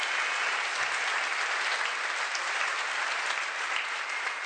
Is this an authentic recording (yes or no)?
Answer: yes